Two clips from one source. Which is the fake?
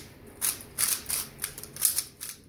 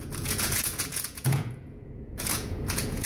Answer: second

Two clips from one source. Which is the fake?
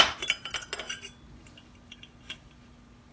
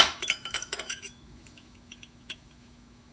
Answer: second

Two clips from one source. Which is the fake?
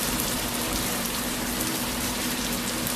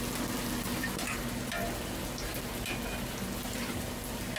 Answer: first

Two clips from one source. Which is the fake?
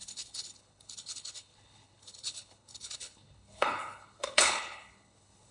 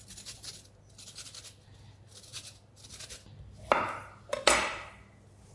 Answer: first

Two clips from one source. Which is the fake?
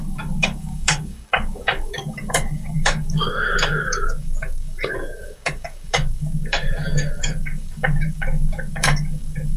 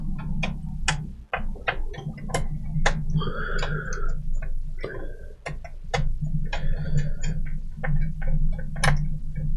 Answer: first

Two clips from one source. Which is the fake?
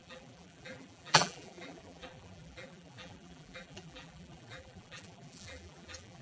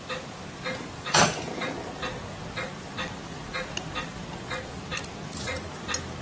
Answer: first